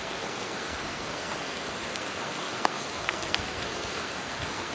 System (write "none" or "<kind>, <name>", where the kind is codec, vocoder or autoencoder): codec, SNAC